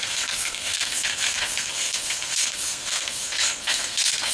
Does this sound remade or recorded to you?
remade